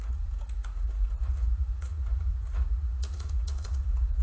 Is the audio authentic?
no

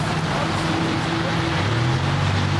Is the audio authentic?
yes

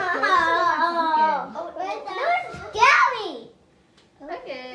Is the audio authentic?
yes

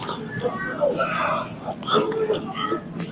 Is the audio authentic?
yes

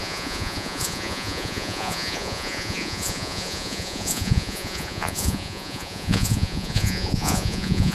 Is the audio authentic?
no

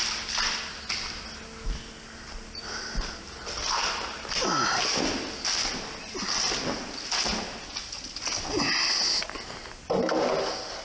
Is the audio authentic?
yes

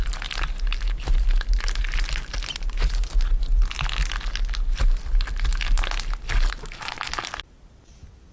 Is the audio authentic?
yes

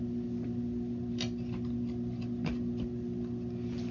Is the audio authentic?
yes